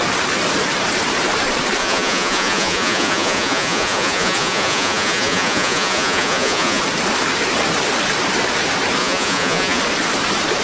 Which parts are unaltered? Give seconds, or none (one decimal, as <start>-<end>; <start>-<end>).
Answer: 0.0-1.8; 6.8-9.0; 9.8-10.6